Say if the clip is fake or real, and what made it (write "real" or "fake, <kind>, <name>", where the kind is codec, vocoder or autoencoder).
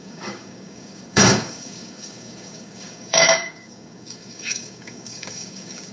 fake, codec, DAC